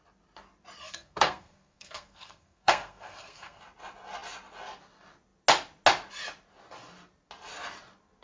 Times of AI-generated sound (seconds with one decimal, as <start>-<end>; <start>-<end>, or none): 0.8-3.6